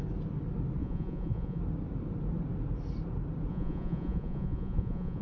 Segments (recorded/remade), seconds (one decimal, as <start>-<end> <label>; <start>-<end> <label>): 0.0-0.8 recorded; 0.8-1.6 remade; 1.6-3.5 recorded; 3.5-5.2 remade